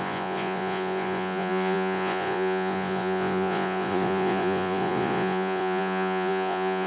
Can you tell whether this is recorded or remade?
remade